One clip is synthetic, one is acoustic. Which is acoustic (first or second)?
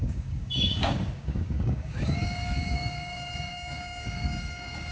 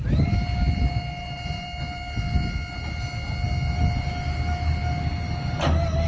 second